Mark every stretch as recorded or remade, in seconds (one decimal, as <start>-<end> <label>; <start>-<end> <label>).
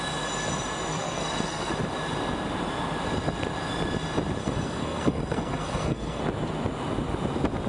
0.0-0.9 recorded; 0.9-1.7 remade; 1.7-4.4 recorded; 4.4-6.2 remade; 6.2-7.7 recorded